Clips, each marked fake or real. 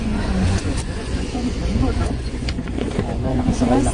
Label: fake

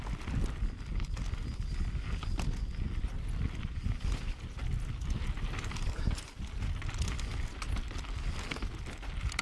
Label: real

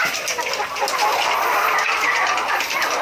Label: real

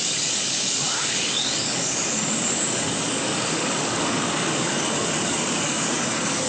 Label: fake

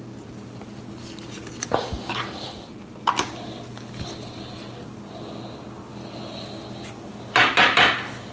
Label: real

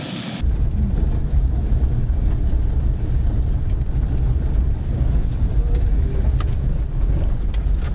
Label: real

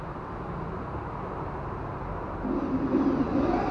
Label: real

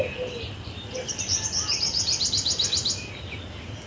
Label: real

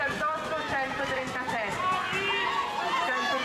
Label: real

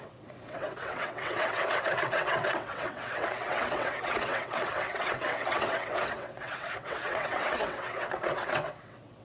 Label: fake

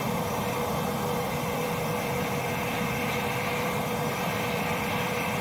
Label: fake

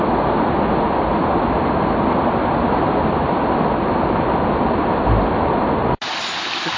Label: real